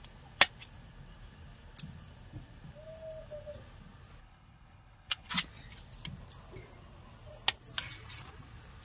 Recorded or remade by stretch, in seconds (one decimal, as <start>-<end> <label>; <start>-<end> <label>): 0.0-4.2 recorded; 4.2-5.3 remade; 5.3-8.8 recorded

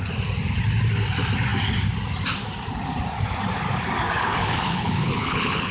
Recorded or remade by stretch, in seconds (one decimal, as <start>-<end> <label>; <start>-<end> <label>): 0.0-4.2 recorded; 4.2-5.7 remade

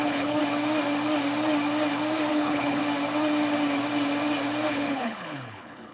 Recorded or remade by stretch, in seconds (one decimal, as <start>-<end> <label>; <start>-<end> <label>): 0.0-0.4 remade; 0.4-2.3 recorded; 2.3-2.8 remade; 2.8-4.7 recorded; 4.7-5.9 remade

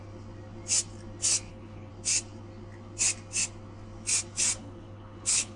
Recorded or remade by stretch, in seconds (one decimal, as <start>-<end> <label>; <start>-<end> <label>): 0.0-1.5 recorded; 1.5-1.9 remade; 1.9-4.6 recorded; 4.6-5.6 remade

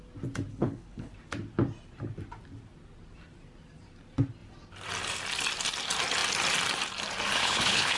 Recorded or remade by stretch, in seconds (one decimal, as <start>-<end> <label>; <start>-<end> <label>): 0.0-0.5 recorded; 0.5-1.1 remade; 1.1-7.4 recorded; 7.4-8.0 remade

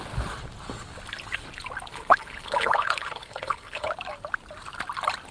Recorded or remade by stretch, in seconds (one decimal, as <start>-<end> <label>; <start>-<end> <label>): 0.0-1.9 recorded; 1.9-3.9 remade; 3.9-5.3 recorded